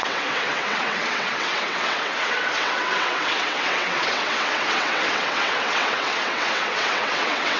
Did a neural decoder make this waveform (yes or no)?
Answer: yes